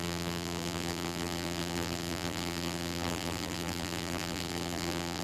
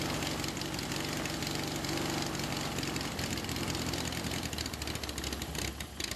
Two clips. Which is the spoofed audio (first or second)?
first